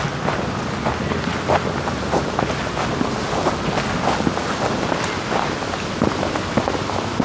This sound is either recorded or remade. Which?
recorded